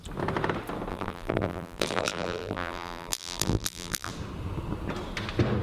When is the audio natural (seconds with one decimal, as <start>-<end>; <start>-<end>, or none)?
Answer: 0.0-0.9; 4.1-5.6